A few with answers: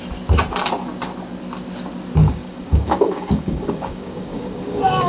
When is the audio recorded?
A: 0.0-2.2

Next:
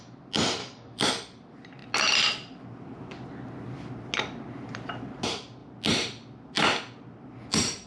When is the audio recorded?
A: 0.0-0.6; 1.1-7.9

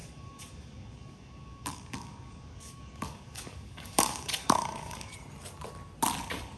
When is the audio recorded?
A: 5.1-6.6

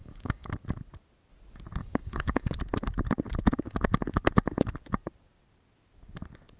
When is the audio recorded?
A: 0.5-1.8; 2.6-6.6

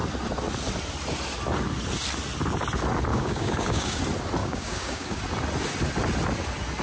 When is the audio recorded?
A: 0.0-3.1; 4.0-4.4; 5.2-6.8

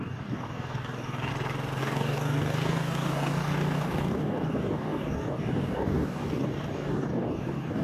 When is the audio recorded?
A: 1.3-1.8